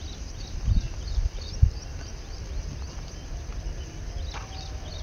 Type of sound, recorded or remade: recorded